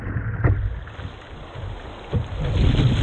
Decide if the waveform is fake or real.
real